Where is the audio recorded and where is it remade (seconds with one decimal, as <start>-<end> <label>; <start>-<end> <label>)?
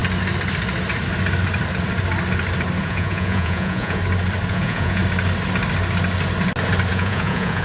0.0-2.8 recorded; 2.8-4.0 remade; 4.0-4.5 recorded; 4.5-5.0 remade; 5.0-6.9 recorded; 6.9-7.6 remade